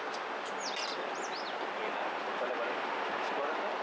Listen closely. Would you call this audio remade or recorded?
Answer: recorded